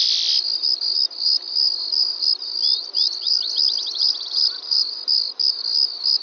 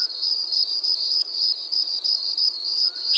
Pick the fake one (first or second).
second